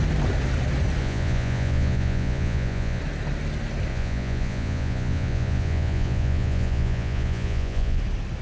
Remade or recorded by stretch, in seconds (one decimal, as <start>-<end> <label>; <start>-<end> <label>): 0.0-1.0 recorded; 1.0-3.0 remade; 3.0-3.9 recorded; 3.9-8.0 remade; 8.0-8.4 recorded